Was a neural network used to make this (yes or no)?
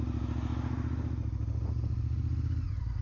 no